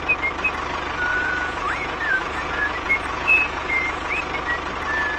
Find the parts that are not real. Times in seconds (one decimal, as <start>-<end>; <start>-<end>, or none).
1.1-4.2